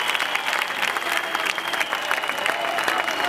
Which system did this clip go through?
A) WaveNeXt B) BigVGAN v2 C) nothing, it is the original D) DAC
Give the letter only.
C